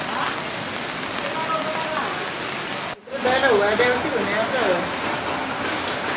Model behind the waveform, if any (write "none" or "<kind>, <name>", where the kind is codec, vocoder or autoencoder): none